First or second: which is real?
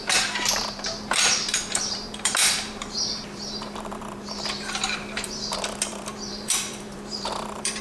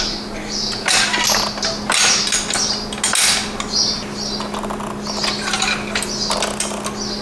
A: second